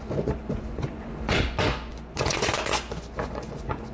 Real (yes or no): no